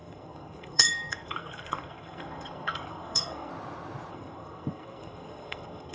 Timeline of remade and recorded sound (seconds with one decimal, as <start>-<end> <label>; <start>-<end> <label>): 0.0-3.5 remade; 3.5-4.1 recorded; 4.1-5.9 remade